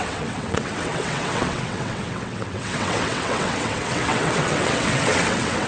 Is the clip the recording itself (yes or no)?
no